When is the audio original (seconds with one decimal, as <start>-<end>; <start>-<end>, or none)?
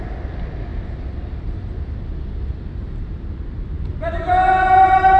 0.0-3.9